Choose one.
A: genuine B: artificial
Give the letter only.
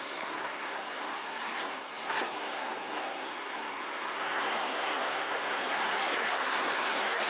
B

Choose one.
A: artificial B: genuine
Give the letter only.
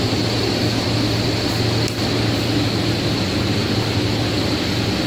B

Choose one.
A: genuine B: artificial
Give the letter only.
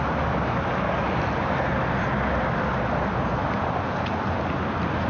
A